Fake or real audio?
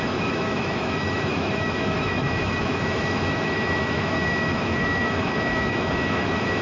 fake